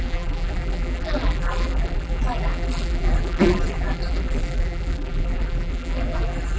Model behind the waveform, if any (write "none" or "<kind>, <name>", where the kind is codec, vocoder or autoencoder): vocoder, BigVGAN v2